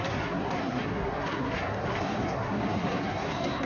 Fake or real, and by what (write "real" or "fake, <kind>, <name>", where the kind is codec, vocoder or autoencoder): fake, codec, SNAC